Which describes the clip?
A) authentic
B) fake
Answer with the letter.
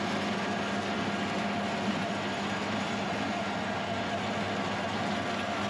A